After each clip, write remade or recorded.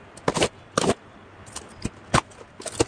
recorded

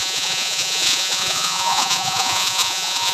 remade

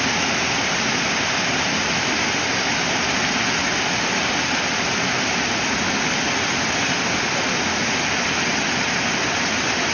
recorded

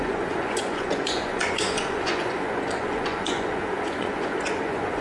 remade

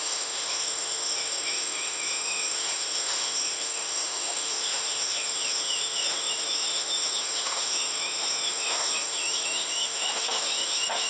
remade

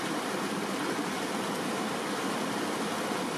recorded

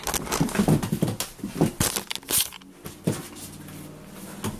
recorded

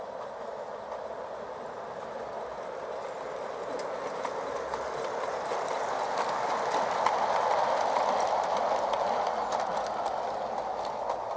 recorded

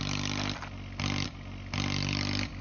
recorded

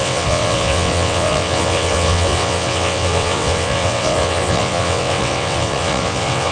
remade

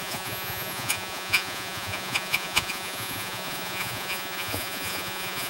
remade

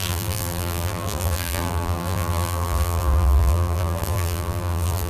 remade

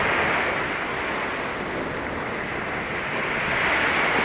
recorded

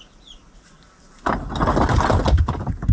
recorded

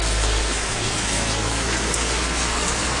remade